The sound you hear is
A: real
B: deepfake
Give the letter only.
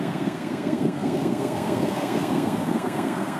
B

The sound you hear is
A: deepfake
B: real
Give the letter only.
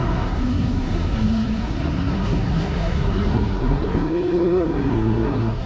A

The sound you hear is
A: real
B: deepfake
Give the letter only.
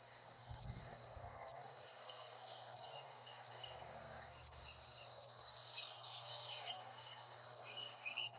B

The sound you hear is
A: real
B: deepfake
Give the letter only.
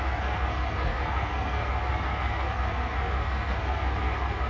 B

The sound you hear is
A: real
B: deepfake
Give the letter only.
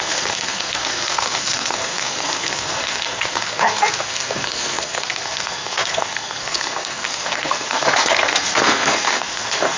B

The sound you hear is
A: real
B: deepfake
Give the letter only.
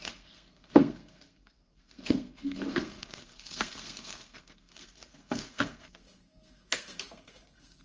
B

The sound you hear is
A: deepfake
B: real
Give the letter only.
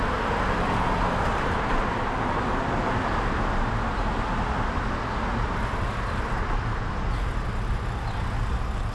B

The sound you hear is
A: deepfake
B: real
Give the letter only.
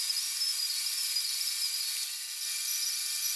B